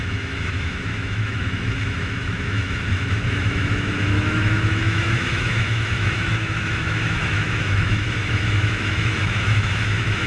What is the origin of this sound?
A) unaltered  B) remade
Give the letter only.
B